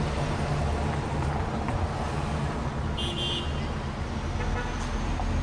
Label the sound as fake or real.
real